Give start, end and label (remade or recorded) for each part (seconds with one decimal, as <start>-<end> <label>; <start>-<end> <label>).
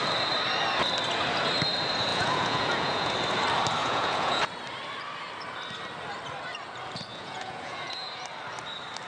0.0-2.1 recorded; 2.1-3.1 remade; 3.1-3.8 recorded; 3.8-4.5 remade; 4.5-7.1 recorded; 7.1-8.1 remade; 8.1-9.1 recorded